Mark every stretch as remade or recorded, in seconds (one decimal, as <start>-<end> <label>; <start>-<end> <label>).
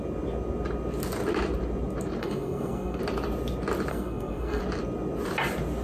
0.0-2.2 recorded; 2.2-3.0 remade; 3.0-3.9 recorded; 3.9-4.6 remade; 4.6-5.8 recorded